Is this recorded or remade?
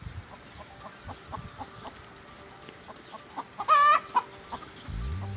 recorded